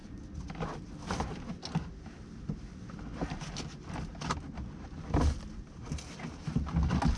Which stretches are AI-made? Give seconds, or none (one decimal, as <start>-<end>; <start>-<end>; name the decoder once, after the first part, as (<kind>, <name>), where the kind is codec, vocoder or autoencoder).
none

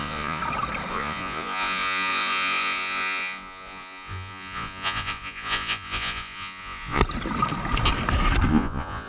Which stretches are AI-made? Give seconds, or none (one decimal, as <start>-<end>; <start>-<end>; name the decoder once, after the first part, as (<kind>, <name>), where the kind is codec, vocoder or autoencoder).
0.0-0.4 (vocoder, Vocos); 0.9-7.0; 8.5-9.1

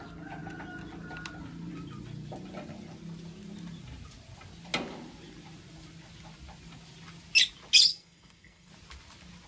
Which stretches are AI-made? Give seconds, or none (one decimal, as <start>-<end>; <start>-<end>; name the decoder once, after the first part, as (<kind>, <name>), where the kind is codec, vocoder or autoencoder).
7.9-8.7 (codec, SNAC)

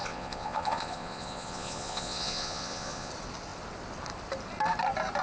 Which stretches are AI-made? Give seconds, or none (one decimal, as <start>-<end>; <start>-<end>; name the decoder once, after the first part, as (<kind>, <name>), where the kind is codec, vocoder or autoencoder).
0.0-3.1 (vocoder, Vocos)